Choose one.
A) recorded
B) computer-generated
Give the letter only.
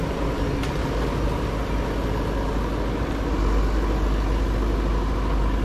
A